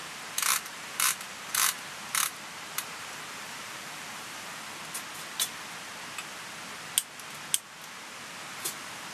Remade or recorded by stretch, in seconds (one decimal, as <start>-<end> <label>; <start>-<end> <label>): 0.0-4.6 remade; 4.6-9.1 recorded